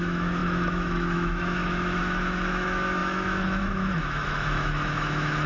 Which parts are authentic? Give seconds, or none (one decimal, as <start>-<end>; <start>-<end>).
none